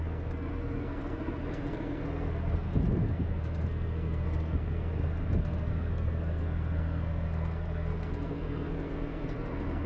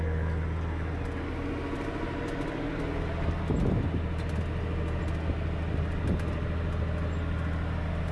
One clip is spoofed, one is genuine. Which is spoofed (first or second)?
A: first